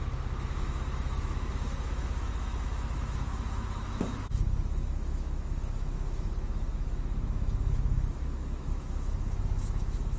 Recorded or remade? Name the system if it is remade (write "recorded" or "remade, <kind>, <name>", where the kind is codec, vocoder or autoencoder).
remade, autoencoder, DAC-VAE